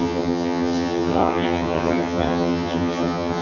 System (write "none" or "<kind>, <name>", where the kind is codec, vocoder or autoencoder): vocoder, HiFi-GAN